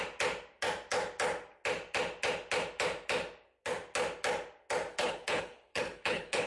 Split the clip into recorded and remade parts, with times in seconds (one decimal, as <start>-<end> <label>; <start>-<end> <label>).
0.0-4.9 recorded; 4.9-6.5 remade